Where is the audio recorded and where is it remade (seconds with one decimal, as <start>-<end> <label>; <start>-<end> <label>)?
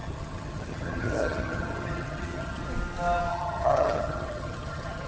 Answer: 0.0-2.7 remade; 2.7-3.3 recorded; 3.3-5.1 remade